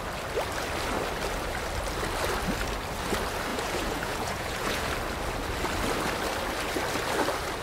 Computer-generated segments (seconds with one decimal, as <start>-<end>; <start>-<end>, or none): 3.5-4.9